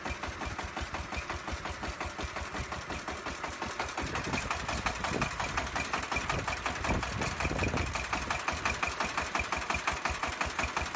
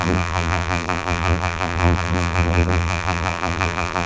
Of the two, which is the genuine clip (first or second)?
first